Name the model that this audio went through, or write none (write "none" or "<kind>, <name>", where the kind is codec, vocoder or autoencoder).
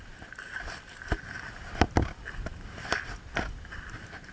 none